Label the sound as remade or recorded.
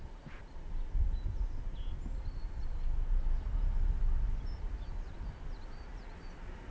recorded